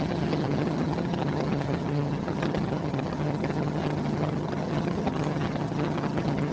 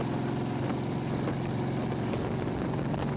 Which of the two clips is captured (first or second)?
second